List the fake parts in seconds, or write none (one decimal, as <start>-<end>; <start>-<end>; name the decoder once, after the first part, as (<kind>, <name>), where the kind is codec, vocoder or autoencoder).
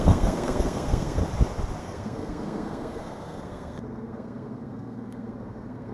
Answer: 0.0-1.2 (codec, SNAC); 1.8-5.9